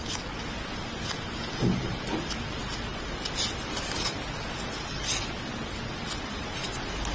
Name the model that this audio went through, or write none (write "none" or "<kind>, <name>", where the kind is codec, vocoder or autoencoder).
none